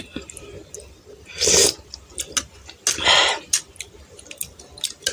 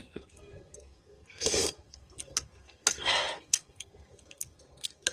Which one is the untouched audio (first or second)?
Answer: first